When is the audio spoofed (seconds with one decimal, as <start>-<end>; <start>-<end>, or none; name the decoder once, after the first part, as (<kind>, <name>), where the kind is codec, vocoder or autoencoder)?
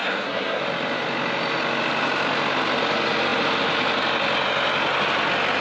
0.0-0.6 (codec, SNAC)